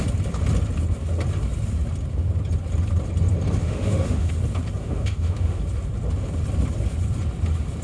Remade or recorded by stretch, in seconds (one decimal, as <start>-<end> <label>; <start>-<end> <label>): 0.0-3.6 recorded; 3.6-4.3 remade; 4.3-4.8 recorded; 4.8-5.6 remade; 5.6-7.8 recorded